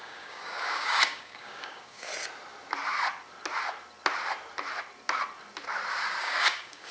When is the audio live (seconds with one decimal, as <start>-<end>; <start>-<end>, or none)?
2.1-6.2